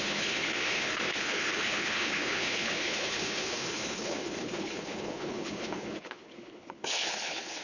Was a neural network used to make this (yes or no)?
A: yes